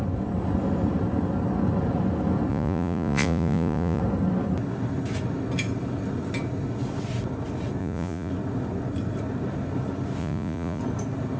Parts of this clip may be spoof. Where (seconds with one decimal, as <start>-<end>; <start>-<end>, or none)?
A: 2.5-4.0; 7.8-8.3; 10.2-10.8